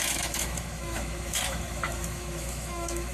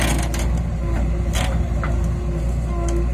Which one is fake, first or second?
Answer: first